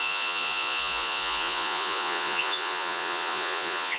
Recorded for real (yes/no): no